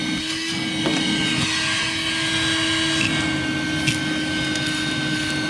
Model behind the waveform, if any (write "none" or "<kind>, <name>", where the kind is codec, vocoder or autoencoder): none